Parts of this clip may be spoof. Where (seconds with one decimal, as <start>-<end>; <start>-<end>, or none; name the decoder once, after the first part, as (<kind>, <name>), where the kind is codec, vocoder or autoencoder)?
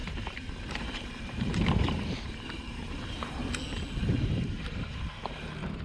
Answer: 0.0-3.5 (vocoder, BigVGAN v2); 4.0-5.8